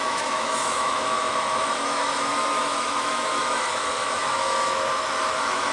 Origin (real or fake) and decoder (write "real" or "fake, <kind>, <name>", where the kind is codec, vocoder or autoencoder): fake, autoencoder, DAC-VAE